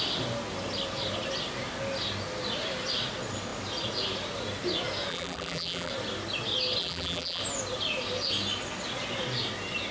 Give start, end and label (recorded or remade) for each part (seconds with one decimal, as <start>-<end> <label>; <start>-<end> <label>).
0.0-5.1 recorded; 5.1-5.9 remade; 5.9-6.8 recorded; 6.8-7.4 remade; 7.4-9.9 recorded